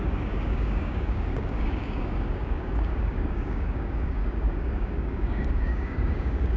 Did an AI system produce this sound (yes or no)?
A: yes